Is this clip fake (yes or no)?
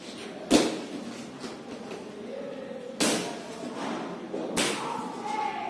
no